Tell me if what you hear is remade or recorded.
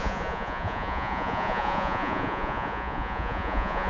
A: remade